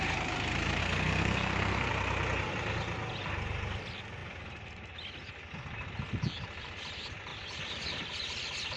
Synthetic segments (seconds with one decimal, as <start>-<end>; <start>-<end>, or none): 0.8-1.9